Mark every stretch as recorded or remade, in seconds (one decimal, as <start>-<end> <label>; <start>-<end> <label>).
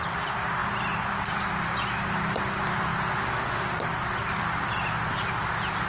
0.0-5.9 recorded